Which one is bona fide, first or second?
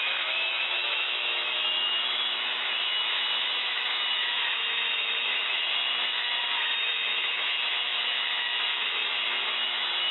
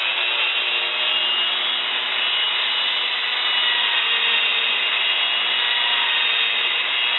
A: second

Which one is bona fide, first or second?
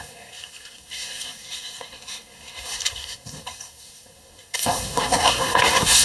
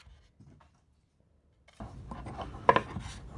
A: second